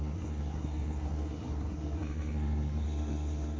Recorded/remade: remade